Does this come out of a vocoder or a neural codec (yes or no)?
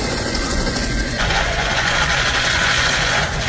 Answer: yes